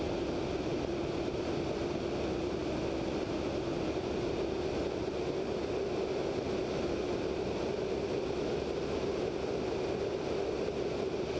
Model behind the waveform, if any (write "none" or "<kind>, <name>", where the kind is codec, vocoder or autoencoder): none